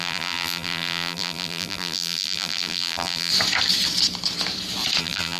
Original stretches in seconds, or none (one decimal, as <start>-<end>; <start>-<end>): 3.3-5.0